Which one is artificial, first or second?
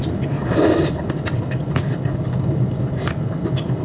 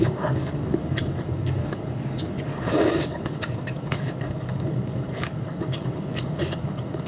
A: second